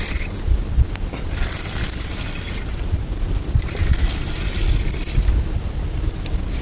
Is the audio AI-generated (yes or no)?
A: no